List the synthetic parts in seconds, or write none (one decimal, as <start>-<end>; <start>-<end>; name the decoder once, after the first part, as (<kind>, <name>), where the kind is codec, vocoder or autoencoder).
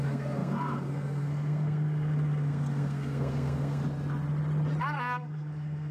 0.0-3.8 (codec, SNAC); 4.8-5.9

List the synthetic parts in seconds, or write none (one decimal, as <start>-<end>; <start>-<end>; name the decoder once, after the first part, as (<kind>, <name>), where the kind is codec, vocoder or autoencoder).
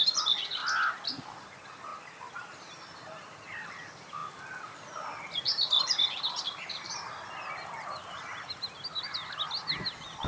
none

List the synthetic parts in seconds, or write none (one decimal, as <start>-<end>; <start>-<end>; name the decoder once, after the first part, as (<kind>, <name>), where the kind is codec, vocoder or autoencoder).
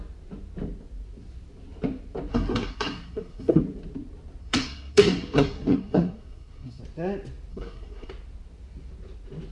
2.3-3.6 (codec, SNAC); 4.4-6.8; 7.5-8.1